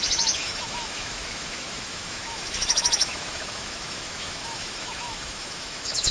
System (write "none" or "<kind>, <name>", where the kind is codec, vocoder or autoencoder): autoencoder, DAC-VAE